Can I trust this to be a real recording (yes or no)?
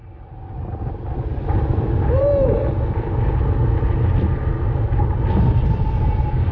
yes